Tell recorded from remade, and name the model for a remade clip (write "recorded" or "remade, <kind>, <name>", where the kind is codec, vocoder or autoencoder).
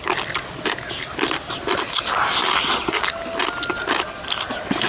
recorded